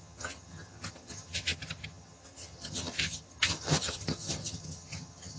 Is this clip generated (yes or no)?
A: yes